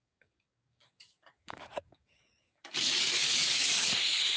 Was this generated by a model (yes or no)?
yes